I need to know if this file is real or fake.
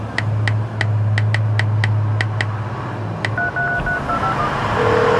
real